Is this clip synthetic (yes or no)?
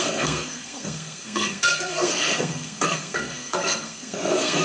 yes